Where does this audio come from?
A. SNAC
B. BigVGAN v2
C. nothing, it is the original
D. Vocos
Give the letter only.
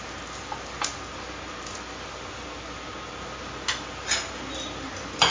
C